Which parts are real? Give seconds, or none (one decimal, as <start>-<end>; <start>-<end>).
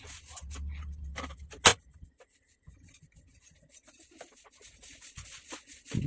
0.0-6.1